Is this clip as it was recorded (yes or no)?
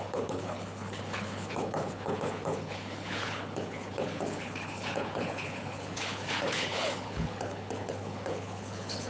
no